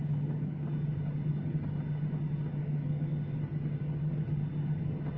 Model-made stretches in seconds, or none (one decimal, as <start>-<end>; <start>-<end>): 1.3-1.8; 2.6-4.2